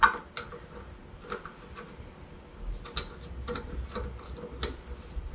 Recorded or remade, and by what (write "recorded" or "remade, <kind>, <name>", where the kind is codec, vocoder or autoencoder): recorded